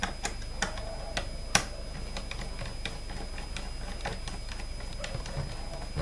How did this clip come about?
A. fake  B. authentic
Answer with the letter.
B